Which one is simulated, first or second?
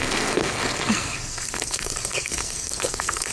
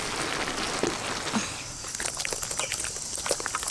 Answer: first